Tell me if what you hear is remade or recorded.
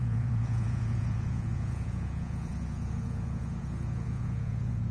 remade